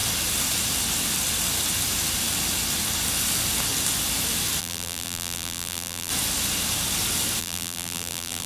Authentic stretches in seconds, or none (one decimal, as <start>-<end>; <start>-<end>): 0.0-4.6; 6.1-7.4